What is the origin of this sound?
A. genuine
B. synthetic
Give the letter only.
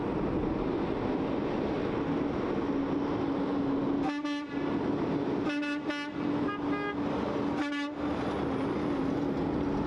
A